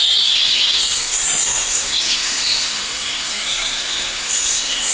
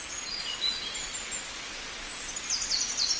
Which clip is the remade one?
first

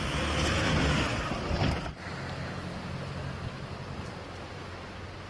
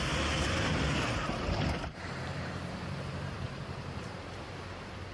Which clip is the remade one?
second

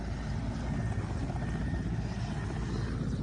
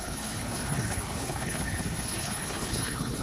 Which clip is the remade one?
second